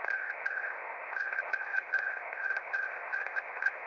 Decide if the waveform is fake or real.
fake